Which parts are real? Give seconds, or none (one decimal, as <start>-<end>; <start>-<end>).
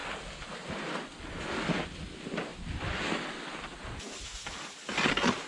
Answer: 0.0-2.5; 3.1-5.5